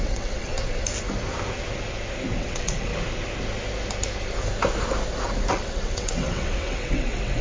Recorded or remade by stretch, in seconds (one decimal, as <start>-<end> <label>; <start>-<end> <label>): 0.0-0.5 remade; 0.5-2.4 recorded; 2.4-2.9 remade; 2.9-5.5 recorded; 5.5-7.4 remade